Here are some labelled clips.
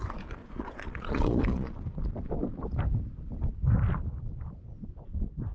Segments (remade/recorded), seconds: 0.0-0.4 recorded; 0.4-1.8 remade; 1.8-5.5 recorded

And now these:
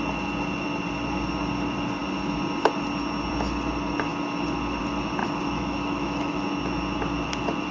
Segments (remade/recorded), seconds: 0.0-5.2 recorded; 5.2-6.4 remade; 6.4-7.7 recorded

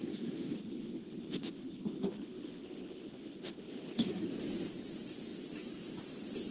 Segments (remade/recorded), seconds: 0.0-0.6 recorded; 0.6-3.7 remade; 3.7-6.5 recorded

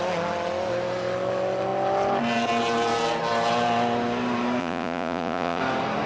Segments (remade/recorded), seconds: 0.0-4.6 recorded; 4.6-5.6 remade; 5.6-6.1 recorded

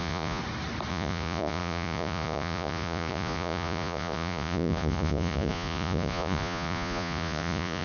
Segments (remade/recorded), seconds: 0.0-0.4 remade; 0.4-0.9 recorded; 0.9-7.8 remade

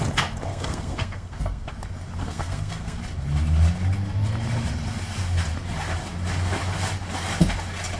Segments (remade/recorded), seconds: 0.0-0.5 recorded; 0.5-1.7 remade; 1.7-2.2 recorded; 2.2-3.0 remade; 3.0-8.0 recorded

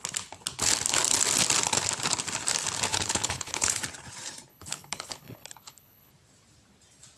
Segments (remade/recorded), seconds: 0.0-2.9 recorded; 2.9-3.8 remade; 3.8-4.5 recorded; 4.5-6.1 remade; 6.1-7.2 recorded